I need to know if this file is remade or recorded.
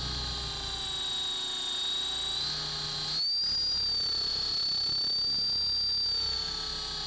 recorded